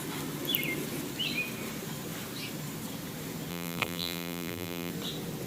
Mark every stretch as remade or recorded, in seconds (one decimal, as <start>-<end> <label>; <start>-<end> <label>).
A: 0.0-3.5 recorded; 3.5-4.9 remade; 4.9-5.5 recorded